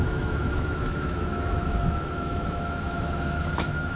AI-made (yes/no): yes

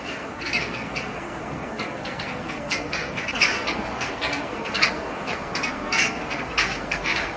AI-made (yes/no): yes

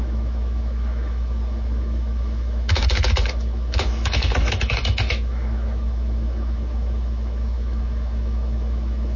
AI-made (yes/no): yes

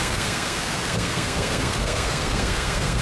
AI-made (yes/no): yes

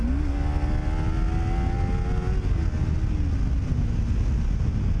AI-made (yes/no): no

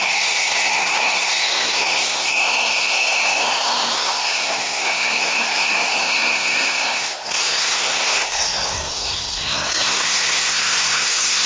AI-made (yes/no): yes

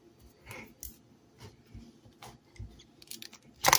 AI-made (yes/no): no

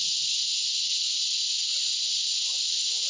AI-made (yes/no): no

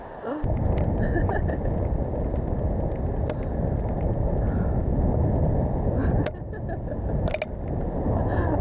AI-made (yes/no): no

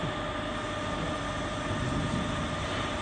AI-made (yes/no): no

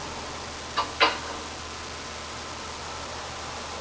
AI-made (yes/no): no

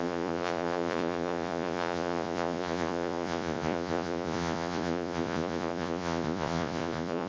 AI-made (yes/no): yes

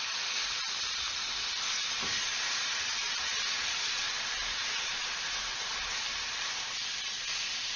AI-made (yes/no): no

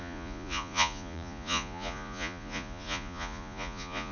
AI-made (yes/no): yes